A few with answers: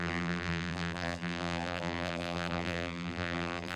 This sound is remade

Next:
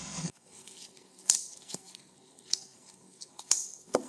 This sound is remade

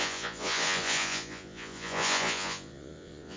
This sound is remade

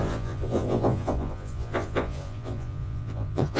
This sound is remade